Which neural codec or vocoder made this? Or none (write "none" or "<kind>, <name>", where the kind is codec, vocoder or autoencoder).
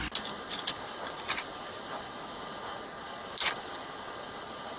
none